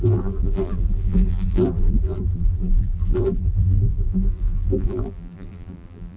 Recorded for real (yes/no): no